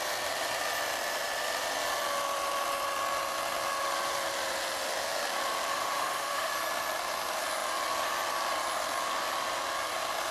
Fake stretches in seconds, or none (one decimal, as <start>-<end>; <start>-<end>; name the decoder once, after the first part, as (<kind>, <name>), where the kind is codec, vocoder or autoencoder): 5.7-6.5 (autoencoder, DAC-VAE)